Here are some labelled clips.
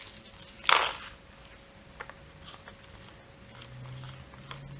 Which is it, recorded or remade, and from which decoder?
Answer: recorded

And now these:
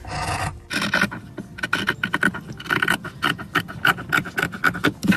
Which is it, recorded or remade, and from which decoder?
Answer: recorded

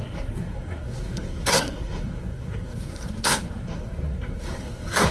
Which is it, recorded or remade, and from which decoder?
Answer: remade, codec, SNAC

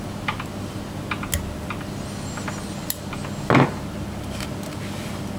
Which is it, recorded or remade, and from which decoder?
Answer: recorded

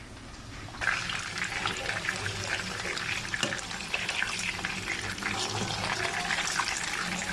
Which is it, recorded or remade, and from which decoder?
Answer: recorded